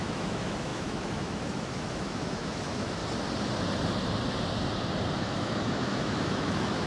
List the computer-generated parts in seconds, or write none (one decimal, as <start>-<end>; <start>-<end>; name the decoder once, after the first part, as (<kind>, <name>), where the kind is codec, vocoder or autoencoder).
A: 0.0-3.0 (autoencoder, DAC-VAE); 5.2-6.9